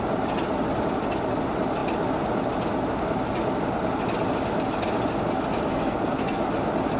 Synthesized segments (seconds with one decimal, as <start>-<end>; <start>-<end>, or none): 5.7-6.4

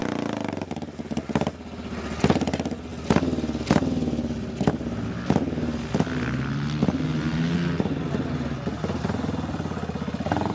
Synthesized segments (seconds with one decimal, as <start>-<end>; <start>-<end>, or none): none

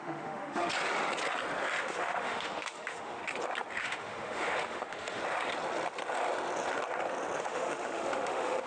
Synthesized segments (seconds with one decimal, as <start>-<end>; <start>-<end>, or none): 0.0-0.7; 1.8-3.2; 3.8-5.2; 7.4-8.7

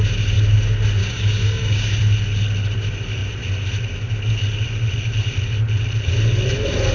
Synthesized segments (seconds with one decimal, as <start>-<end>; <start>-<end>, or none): 1.0-2.0

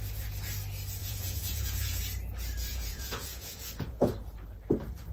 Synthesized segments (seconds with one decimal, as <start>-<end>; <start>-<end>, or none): 1.0-2.0; 2.7-4.1

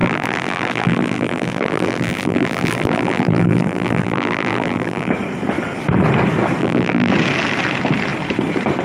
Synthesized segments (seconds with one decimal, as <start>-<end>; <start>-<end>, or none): 0.0-5.1; 6.6-7.1

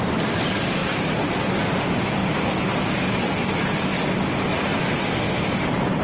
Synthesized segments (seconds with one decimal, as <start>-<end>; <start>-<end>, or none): 0.0-0.8; 1.6-2.2; 5.3-6.0